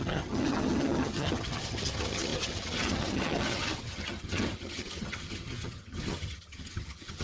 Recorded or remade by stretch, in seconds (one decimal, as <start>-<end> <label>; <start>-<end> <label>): 0.0-7.2 remade